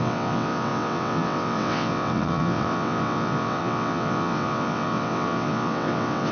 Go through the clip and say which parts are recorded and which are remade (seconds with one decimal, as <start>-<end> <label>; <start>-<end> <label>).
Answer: 0.0-6.3 remade